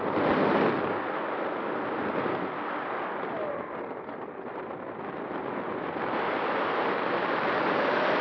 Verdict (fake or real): real